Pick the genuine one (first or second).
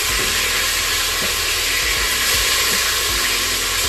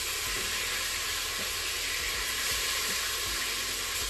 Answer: first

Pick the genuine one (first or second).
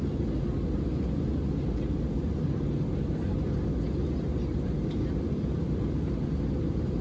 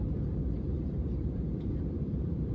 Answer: first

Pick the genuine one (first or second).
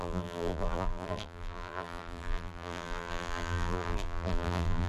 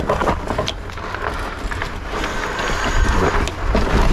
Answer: second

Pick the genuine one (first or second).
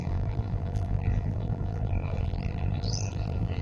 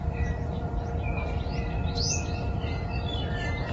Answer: second